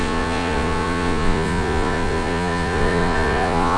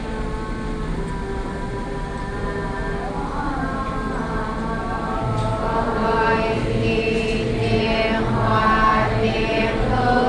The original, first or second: second